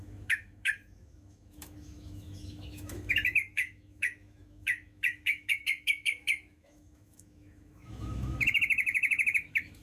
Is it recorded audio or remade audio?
remade